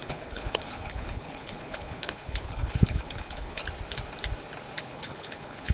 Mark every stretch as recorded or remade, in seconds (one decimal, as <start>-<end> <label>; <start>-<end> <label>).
0.0-3.6 remade; 3.6-4.8 recorded; 4.8-5.7 remade